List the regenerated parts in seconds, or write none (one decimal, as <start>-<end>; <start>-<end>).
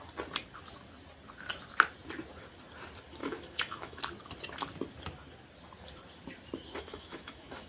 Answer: 3.2-4.0; 6.9-7.7